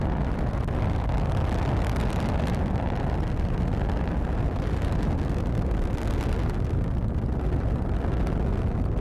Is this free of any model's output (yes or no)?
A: yes